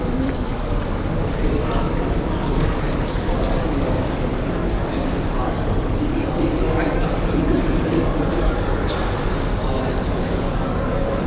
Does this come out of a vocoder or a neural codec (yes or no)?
yes